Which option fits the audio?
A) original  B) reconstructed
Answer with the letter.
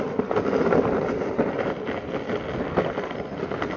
A